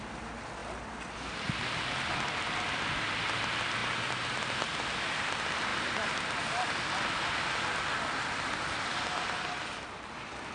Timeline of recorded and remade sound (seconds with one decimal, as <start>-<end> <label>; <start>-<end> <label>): 0.0-10.5 recorded